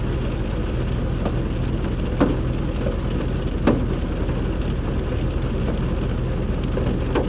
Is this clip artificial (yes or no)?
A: no